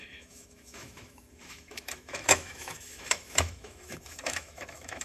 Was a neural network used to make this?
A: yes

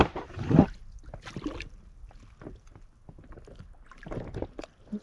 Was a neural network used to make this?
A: no